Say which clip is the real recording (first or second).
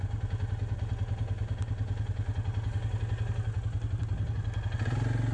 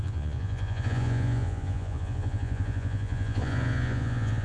first